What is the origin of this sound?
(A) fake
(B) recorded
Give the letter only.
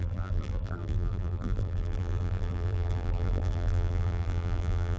A